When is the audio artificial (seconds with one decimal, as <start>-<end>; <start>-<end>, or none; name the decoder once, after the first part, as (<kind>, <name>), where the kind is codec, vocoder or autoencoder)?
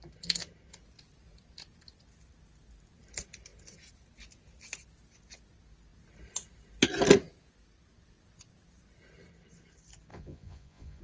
10.1-11.0 (vocoder, Vocos)